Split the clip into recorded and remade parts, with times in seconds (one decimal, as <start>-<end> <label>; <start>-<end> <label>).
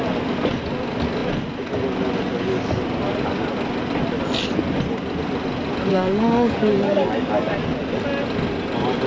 0.0-5.9 recorded; 5.9-7.5 remade; 7.5-9.1 recorded